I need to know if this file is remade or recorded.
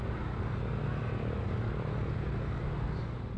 recorded